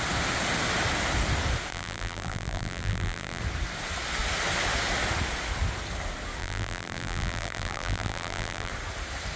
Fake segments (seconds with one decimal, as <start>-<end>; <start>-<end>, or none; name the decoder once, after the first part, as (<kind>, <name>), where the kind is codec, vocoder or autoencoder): 1.7-3.4 (vocoder, BigVGAN v2); 6.4-8.7